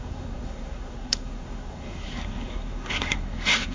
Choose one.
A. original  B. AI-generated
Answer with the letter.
B